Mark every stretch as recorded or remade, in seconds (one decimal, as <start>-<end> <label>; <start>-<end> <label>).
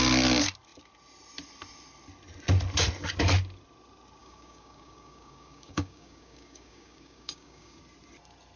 0.0-4.2 recorded; 4.2-7.8 remade; 7.8-8.6 recorded